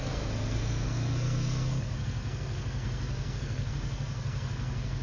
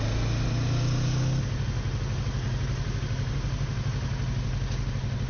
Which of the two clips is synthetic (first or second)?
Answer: first